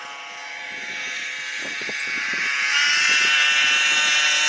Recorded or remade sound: recorded